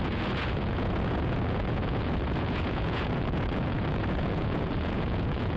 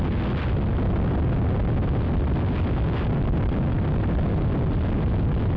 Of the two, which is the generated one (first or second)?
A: first